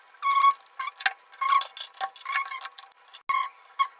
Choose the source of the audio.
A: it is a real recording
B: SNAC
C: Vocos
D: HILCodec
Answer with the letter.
A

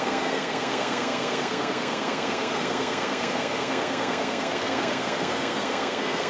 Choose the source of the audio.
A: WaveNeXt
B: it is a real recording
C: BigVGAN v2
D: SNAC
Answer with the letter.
D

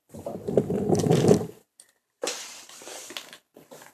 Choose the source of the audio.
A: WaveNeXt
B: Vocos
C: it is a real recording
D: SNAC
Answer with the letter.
C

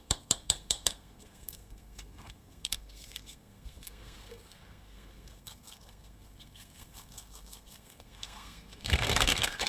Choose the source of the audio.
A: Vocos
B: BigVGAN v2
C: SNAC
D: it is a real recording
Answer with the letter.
C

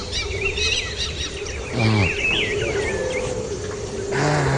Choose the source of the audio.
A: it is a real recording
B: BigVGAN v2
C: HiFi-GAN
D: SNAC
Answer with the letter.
A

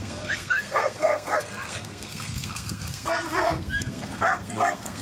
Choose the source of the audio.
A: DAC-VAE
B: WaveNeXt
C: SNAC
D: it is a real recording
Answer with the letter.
C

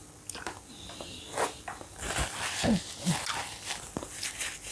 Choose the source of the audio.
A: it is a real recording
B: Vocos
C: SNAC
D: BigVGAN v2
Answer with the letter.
A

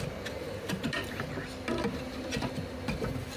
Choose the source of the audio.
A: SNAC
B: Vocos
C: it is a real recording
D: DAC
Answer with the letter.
C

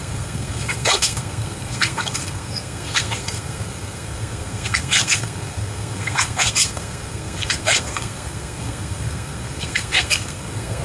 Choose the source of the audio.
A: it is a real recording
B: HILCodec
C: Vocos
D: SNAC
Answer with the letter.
D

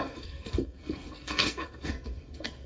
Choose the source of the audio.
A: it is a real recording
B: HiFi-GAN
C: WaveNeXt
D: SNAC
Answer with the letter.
D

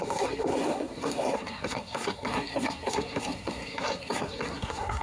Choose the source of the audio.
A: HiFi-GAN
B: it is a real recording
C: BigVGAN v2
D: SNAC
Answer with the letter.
D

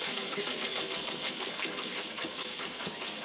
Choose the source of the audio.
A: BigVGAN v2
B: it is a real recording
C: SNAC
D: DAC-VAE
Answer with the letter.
C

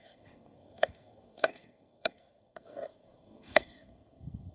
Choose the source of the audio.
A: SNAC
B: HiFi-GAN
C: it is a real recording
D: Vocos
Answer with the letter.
A